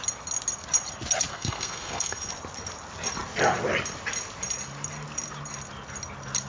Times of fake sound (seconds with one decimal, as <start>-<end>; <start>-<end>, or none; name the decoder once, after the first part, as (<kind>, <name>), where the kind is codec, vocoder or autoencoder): 1.3-2.3 (codec, SNAC)